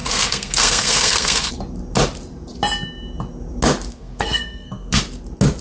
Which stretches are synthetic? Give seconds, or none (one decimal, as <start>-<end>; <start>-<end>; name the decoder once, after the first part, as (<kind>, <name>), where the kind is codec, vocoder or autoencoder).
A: 0.0-1.5 (codec, SNAC); 3.9-5.0